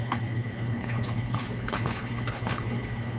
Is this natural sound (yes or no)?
no